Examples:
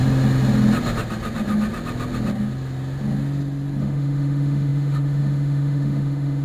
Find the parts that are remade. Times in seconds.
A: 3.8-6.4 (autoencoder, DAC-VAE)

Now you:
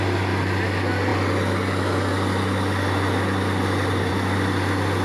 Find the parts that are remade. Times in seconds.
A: none

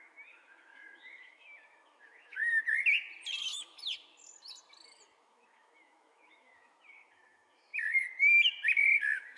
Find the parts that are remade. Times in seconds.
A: 0.0-2.4 (autoencoder, DAC-VAE); 3.4-3.8; 5.2-7.7; 9.0-9.4

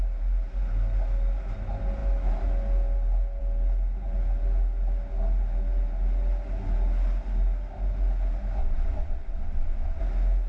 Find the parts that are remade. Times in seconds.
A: 8.6-10.0 (vocoder, WaveNeXt)

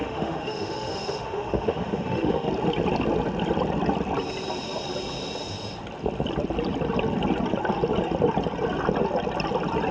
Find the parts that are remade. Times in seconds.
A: 0.0-2.5 (autoencoder, DAC-VAE)

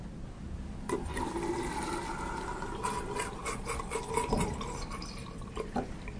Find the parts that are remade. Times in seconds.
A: none

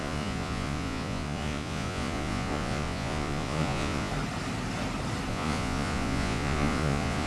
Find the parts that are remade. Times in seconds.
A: 0.0-4.1 (vocoder, Vocos); 5.3-7.3

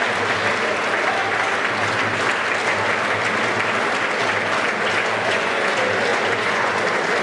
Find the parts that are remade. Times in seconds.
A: 5.0-5.6 (vocoder, Vocos); 6.1-6.8